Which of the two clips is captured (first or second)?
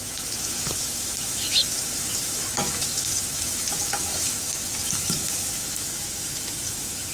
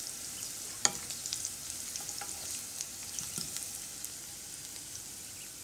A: second